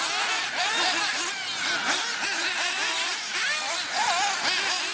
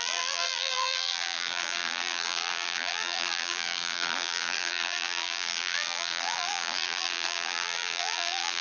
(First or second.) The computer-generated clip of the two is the second